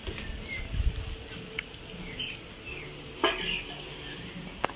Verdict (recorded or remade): recorded